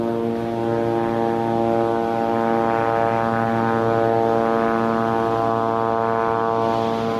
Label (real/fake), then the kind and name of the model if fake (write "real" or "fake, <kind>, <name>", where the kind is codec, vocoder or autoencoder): real